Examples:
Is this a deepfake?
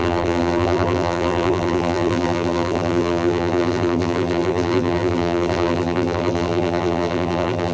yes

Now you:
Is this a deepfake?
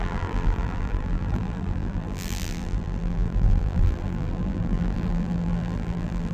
yes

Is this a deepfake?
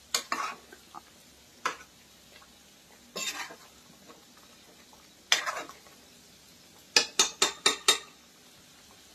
no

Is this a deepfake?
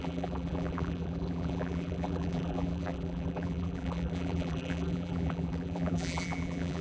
yes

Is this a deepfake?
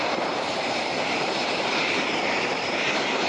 yes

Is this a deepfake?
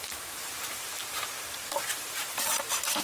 yes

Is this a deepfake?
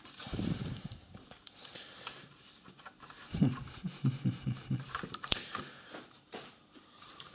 yes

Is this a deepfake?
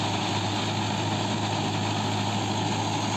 no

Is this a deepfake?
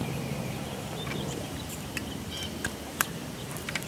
yes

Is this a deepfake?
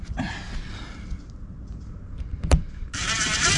yes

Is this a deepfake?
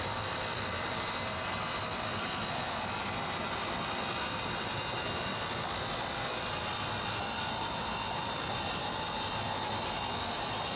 no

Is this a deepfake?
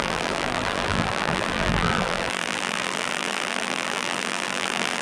yes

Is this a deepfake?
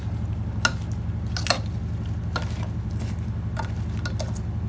no